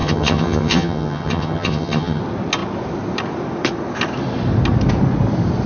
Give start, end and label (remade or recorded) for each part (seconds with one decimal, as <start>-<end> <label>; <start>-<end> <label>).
0.0-2.2 remade; 2.2-5.7 recorded